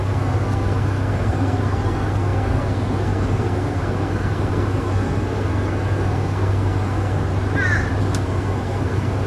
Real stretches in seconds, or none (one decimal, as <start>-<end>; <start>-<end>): 7.3-8.0